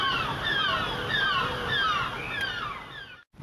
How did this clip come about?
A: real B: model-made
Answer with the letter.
A